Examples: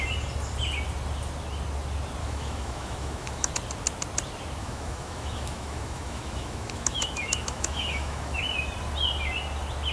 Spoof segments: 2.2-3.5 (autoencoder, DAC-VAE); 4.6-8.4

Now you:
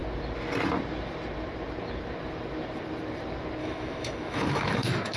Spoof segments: 3.6-5.2 (autoencoder, DAC-VAE)

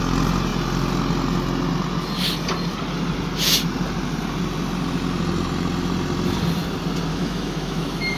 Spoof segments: 7.1-8.2 (autoencoder, DAC-VAE)

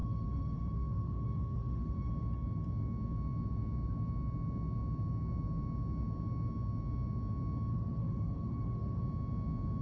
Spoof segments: 0.0-2.1 (autoencoder, DAC-VAE); 7.7-9.0

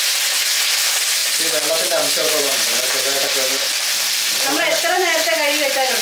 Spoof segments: none

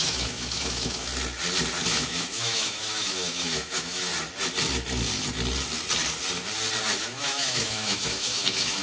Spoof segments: 0.0-1.1 (autoencoder, DAC-VAE); 1.9-4.1; 7.0-8.8

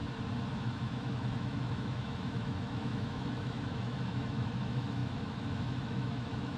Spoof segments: 0.5-6.6 (autoencoder, DAC-VAE)